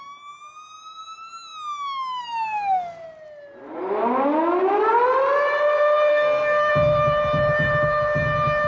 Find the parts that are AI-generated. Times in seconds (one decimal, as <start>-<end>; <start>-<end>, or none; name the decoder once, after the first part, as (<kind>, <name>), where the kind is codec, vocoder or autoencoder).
6.1-6.7 (codec, SNAC)